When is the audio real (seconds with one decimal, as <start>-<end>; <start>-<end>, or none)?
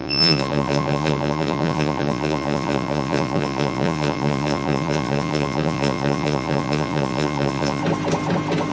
7.8-8.7